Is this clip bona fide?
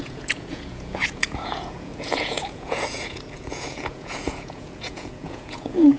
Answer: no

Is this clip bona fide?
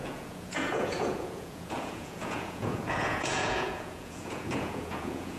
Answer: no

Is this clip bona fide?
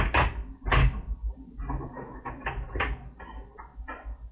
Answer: yes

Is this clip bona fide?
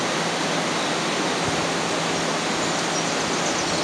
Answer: yes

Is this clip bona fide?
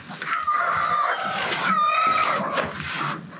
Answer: yes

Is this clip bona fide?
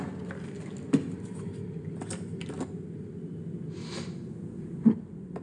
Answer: yes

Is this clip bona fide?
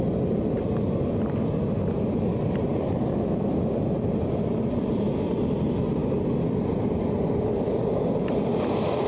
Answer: yes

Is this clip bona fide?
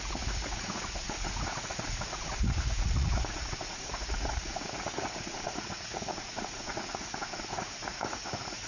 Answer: no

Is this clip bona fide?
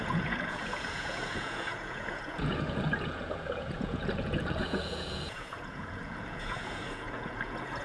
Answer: no